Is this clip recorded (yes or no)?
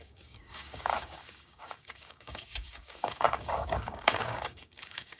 no